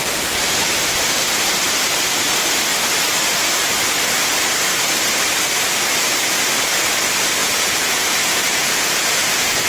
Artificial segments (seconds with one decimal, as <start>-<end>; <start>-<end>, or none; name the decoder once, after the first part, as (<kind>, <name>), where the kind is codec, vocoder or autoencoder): 7.4-9.7 (vocoder, Vocos)